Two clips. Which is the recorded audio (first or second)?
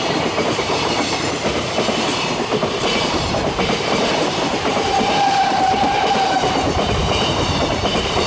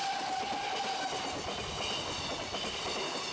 second